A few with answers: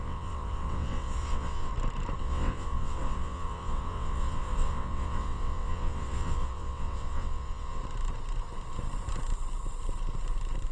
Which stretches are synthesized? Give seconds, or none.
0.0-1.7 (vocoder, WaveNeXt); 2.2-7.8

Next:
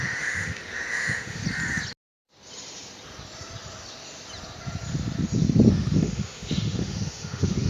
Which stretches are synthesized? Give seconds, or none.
0.0-1.4 (autoencoder, DAC-VAE); 5.7-7.7